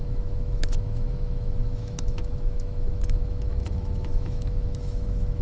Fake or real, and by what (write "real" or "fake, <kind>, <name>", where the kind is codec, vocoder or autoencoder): fake, autoencoder, DAC-VAE